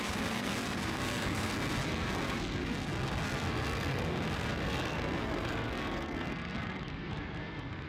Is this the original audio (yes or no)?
no